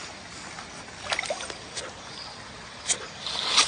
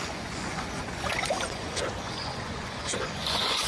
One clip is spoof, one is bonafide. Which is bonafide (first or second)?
first